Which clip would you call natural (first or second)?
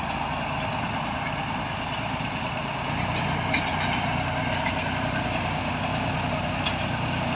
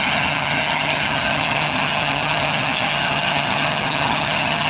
first